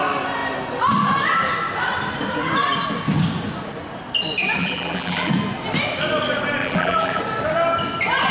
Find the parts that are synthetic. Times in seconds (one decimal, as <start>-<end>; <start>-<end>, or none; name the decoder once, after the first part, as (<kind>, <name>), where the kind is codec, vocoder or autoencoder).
4.6-5.3 (vocoder, BigVGAN v2); 6.6-7.2